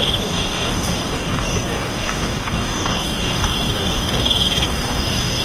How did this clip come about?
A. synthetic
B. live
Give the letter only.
A